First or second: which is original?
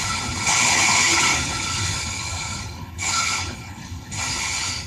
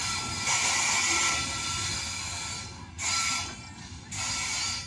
second